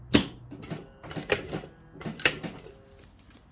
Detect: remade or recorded recorded